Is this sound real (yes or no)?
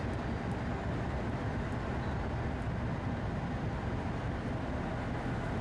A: yes